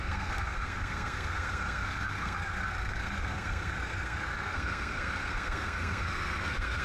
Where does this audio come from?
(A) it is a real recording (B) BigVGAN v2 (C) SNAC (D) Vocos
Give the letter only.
C